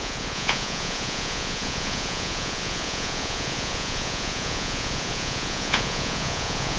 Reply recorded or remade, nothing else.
remade